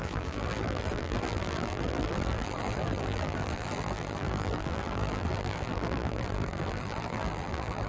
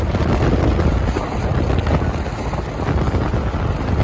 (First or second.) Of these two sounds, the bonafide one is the second